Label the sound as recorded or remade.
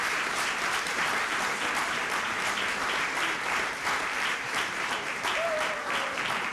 remade